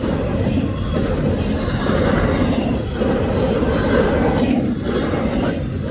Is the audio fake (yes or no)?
no